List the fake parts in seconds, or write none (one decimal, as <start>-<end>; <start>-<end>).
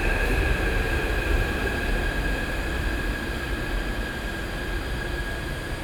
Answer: none